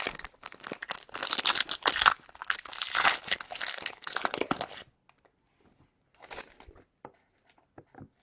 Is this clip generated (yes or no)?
no